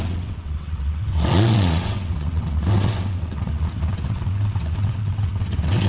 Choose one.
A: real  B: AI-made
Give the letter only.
B